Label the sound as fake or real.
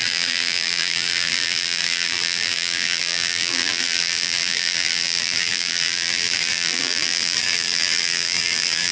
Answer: fake